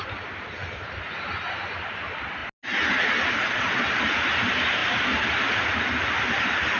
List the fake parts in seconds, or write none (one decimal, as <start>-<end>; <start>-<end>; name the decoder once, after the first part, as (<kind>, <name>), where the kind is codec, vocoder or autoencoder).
none